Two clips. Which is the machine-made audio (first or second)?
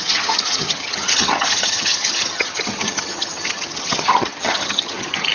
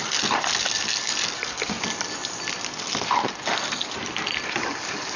first